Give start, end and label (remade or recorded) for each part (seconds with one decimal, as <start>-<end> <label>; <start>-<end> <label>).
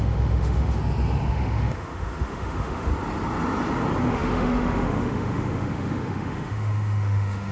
0.0-0.8 remade; 0.8-1.3 recorded; 1.3-2.9 remade; 2.9-4.1 recorded; 4.1-7.5 remade